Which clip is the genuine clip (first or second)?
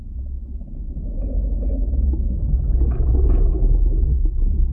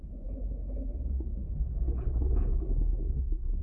first